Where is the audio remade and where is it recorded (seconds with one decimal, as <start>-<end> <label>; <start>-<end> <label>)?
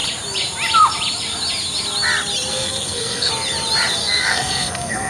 0.0-2.5 recorded; 2.5-3.3 remade; 3.3-4.0 recorded; 4.0-5.1 remade